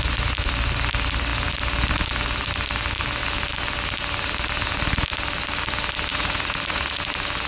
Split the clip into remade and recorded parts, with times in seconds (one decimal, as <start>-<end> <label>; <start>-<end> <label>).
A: 0.0-6.1 recorded; 6.1-7.0 remade; 7.0-7.5 recorded